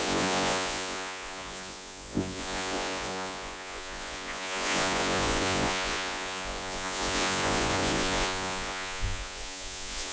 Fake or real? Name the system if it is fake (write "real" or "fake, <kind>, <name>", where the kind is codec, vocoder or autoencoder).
fake, vocoder, Vocos